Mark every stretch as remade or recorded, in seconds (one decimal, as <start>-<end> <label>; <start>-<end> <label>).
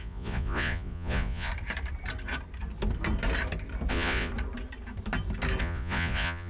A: 0.0-1.5 remade; 1.5-3.9 recorded; 3.9-4.3 remade; 4.3-5.6 recorded; 5.6-6.5 remade